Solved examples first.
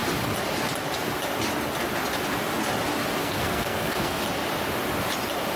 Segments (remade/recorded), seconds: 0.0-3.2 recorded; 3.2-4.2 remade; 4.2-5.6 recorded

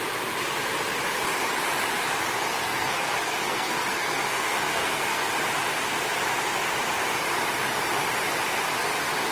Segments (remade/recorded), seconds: 0.0-2.5 recorded; 2.5-5.3 remade; 5.3-9.3 recorded

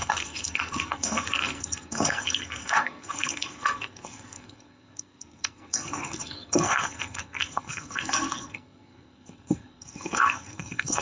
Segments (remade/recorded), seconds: 0.0-11.0 remade

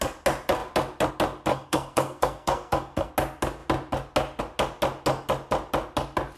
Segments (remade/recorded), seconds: 0.0-1.5 recorded; 1.5-3.1 remade; 3.1-6.4 recorded

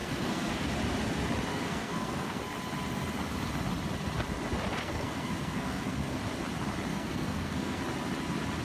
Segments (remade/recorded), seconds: 0.0-0.7 remade; 0.7-1.5 recorded; 1.5-2.4 remade; 2.4-4.8 recorded; 4.8-6.2 remade; 6.2-6.9 recorded; 6.9-7.8 remade; 7.8-8.6 recorded

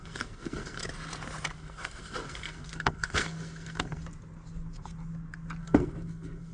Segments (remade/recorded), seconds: 0.0-0.8 remade; 0.8-1.5 recorded; 1.5-4.0 remade; 4.0-5.6 recorded; 5.6-6.5 remade